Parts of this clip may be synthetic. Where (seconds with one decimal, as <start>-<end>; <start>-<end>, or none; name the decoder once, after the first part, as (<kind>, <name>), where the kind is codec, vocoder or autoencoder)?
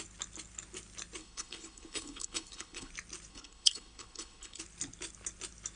1.2-2.9 (codec, HILCodec); 3.3-4.6